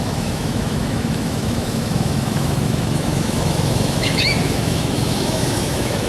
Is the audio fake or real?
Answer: fake